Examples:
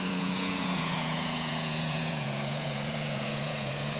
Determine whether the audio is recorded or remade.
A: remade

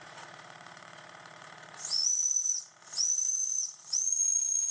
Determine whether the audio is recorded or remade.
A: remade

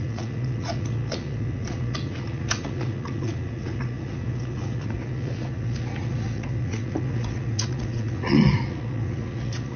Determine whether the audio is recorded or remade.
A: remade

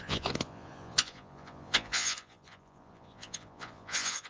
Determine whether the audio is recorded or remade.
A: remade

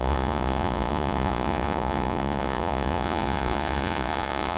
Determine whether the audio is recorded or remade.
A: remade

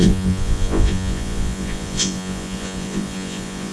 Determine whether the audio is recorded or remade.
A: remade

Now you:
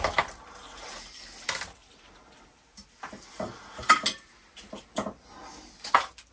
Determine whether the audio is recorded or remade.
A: recorded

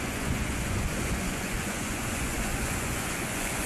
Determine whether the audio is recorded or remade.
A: remade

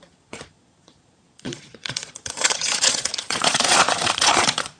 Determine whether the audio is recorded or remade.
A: remade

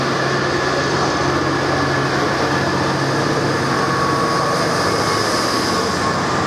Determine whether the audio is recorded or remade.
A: recorded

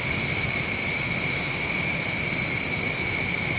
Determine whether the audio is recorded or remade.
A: recorded